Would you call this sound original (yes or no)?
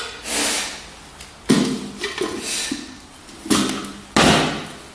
yes